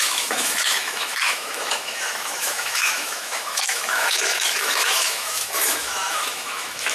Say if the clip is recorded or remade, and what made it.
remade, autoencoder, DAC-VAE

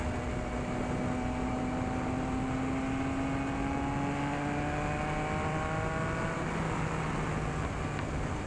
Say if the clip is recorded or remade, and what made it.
recorded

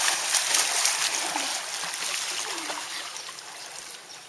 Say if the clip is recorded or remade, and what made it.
recorded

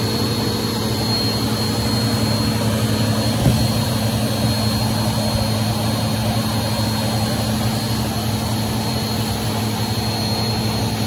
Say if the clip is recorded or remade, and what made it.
recorded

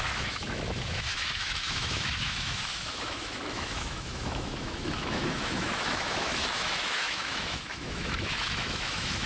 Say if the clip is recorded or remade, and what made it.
remade, autoencoder, DAC-VAE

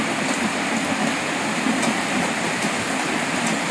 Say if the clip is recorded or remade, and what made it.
recorded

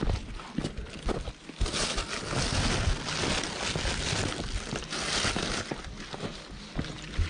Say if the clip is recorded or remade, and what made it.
recorded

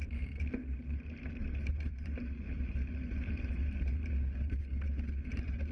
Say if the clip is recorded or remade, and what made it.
remade, vocoder, BigVGAN v2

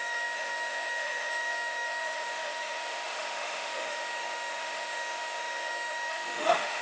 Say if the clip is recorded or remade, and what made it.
remade, autoencoder, DAC-VAE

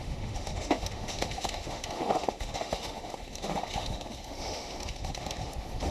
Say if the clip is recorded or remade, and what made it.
remade, autoencoder, DAC-VAE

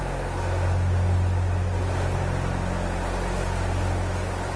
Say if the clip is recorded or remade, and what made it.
recorded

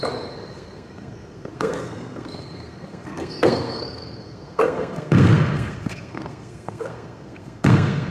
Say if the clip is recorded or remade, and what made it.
remade, codec, SNAC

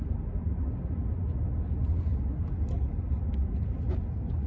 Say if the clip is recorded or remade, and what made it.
recorded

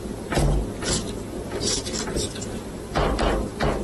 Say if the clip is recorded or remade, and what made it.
recorded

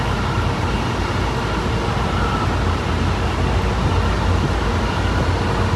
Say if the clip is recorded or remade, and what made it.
recorded